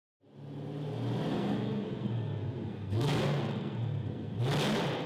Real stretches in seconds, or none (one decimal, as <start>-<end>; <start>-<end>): 0.0-1.3; 4.4-5.1